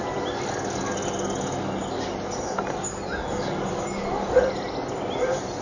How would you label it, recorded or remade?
recorded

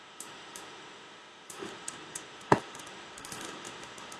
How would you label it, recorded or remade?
remade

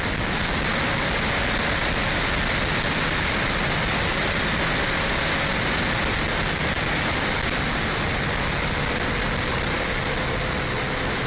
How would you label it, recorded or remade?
recorded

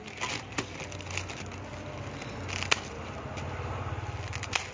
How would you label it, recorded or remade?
recorded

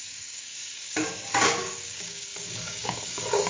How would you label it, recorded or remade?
remade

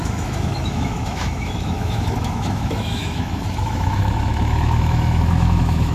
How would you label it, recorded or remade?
remade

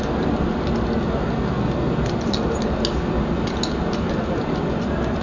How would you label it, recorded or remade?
recorded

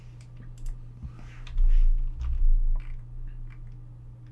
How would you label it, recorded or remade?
recorded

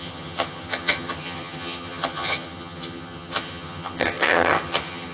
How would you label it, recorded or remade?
remade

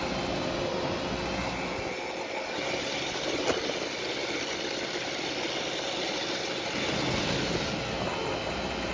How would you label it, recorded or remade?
recorded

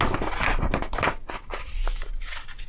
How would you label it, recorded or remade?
recorded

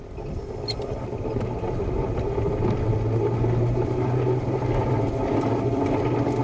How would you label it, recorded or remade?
recorded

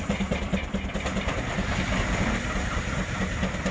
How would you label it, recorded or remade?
recorded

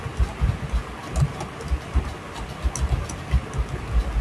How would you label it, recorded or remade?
recorded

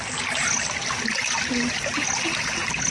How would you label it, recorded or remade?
recorded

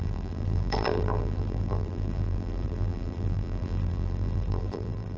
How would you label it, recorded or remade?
remade